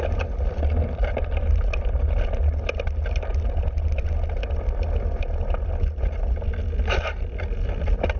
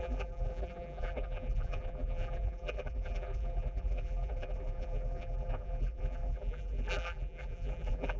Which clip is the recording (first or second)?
first